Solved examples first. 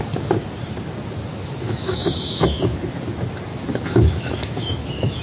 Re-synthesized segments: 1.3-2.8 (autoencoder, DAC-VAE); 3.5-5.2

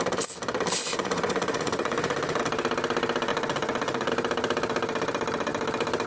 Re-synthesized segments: 0.8-2.4 (vocoder, Vocos); 3.3-4.1